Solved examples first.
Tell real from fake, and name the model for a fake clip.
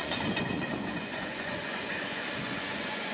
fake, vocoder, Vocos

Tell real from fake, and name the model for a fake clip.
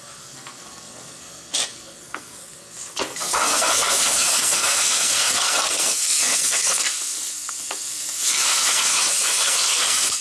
fake, codec, SNAC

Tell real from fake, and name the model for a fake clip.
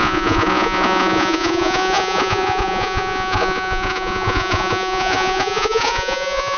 fake, vocoder, Vocos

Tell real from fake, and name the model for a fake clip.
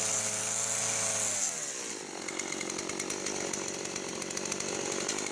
real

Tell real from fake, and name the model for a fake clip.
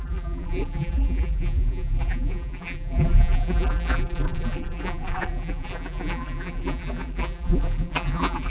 fake, vocoder, BigVGAN v2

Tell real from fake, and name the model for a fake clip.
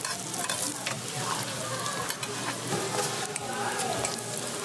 real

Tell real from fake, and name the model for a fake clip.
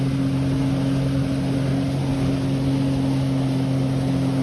real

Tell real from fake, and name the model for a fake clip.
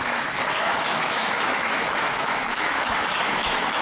fake, autoencoder, DAC-VAE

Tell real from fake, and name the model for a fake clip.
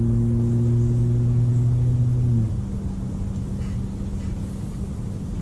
real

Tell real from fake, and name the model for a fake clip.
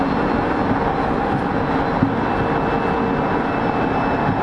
real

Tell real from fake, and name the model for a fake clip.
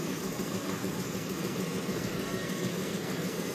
fake, codec, SNAC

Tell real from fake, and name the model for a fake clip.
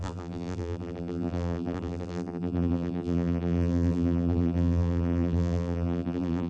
fake, vocoder, BigVGAN v2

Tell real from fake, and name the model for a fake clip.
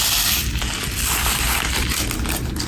real